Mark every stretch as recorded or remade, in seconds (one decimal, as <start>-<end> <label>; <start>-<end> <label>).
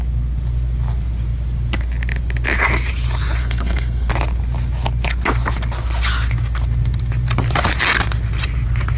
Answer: 0.0-3.4 recorded; 3.4-4.1 remade; 4.1-9.0 recorded